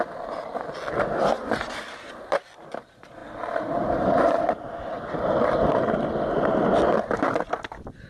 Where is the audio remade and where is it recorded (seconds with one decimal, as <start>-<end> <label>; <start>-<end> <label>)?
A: 0.0-8.1 remade